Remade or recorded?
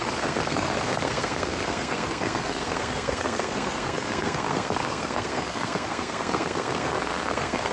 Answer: remade